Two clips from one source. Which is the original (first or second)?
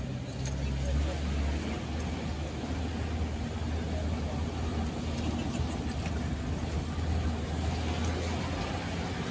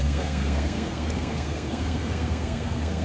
first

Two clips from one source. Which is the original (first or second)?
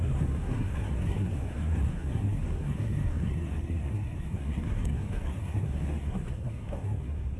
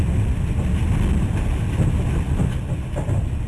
second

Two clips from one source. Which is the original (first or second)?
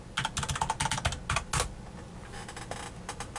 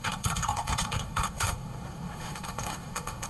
first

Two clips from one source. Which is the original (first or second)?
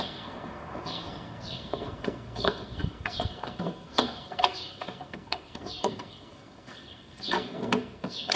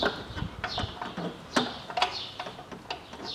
second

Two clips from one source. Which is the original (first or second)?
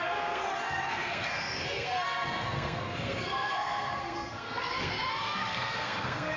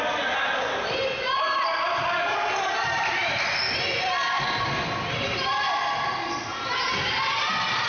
second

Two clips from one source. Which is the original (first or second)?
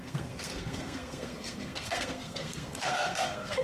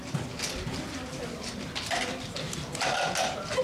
second